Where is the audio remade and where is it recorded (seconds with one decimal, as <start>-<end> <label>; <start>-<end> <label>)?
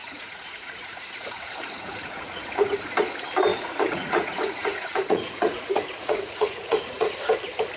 0.0-2.8 remade; 2.8-3.5 recorded; 3.5-7.1 remade; 7.1-7.8 recorded